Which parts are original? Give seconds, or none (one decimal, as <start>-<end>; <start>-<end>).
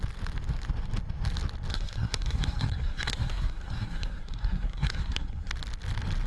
0.0-1.7; 5.5-6.3